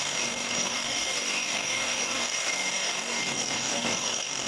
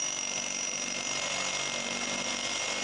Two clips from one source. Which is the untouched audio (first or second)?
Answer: second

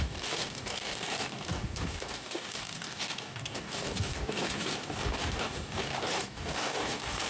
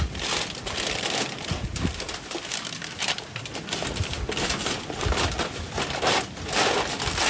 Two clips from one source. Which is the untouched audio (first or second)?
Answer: second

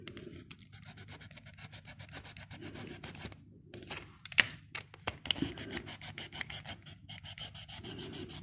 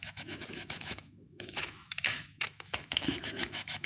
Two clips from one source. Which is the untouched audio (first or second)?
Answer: first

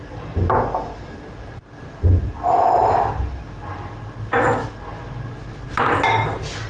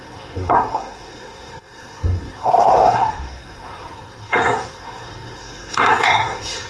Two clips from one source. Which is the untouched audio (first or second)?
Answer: first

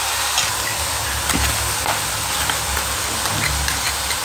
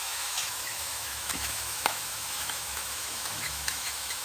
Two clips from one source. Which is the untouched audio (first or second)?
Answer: first